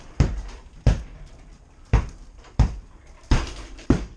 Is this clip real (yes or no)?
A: no